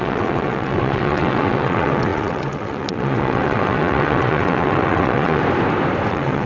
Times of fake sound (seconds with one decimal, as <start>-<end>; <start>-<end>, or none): 0.0-5.4; 6.1-6.5